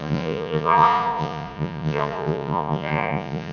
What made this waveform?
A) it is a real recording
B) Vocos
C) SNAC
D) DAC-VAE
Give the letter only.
B